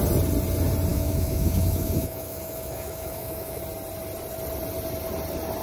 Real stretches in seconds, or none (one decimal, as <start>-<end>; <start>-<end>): 0.0-0.9; 3.6-5.6